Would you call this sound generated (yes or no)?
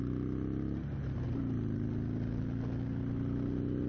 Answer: no